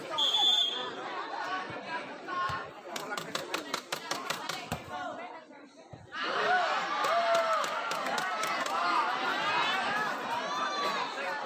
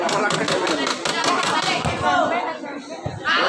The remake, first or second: first